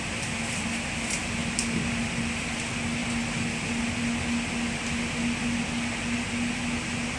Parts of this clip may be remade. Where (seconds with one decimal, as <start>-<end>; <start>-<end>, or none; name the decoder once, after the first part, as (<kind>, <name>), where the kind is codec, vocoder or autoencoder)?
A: none